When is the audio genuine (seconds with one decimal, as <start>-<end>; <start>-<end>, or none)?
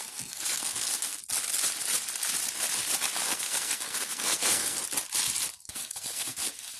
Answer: 1.2-3.3; 4.8-5.5